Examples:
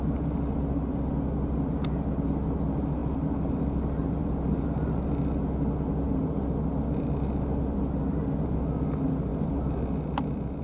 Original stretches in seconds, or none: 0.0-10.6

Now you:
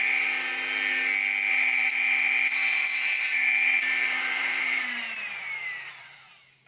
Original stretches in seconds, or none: 0.5-1.5

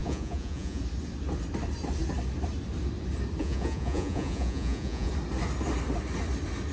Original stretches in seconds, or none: 0.8-3.4; 5.1-6.7

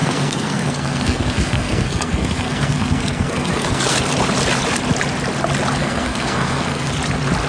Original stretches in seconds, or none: 4.0-5.8; 6.9-7.5

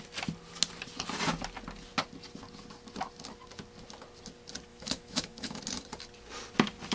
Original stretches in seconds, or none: 0.0-4.7; 5.6-6.9

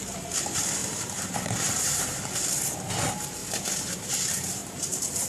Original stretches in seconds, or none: 0.0-0.8; 2.2-3.4; 4.1-4.6

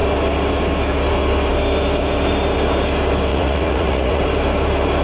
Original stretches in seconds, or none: 0.0-3.3; 4.2-5.0